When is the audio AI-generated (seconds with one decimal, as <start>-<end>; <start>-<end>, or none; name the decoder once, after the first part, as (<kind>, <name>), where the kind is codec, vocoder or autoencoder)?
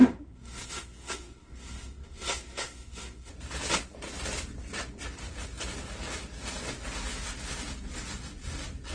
0.0-3.3 (codec, SNAC)